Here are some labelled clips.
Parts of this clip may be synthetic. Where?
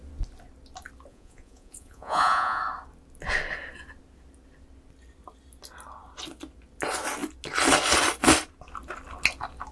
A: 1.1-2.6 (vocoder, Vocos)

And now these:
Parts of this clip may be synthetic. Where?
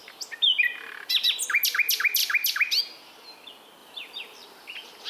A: 0.0-1.6 (vocoder, BigVGAN v2); 3.8-5.1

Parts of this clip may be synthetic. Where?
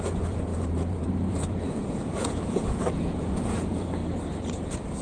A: 0.0-4.0 (vocoder, Vocos)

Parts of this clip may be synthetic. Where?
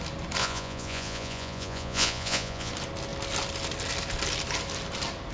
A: 0.4-2.7 (vocoder, Vocos)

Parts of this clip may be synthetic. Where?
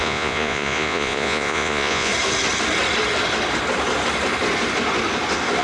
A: 0.0-2.1 (vocoder, Vocos)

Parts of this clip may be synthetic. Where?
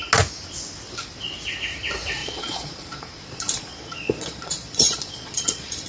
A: 2.2-5.9 (vocoder, Vocos)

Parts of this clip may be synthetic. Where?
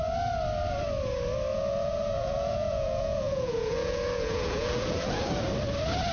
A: 1.5-5.2 (vocoder, Vocos)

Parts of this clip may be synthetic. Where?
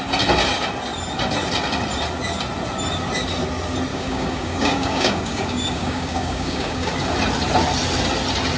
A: 3.9-6.9 (codec, DAC)